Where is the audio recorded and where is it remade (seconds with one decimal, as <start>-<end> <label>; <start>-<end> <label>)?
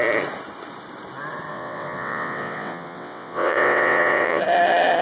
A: 0.0-1.5 recorded; 1.5-4.4 remade; 4.4-5.0 recorded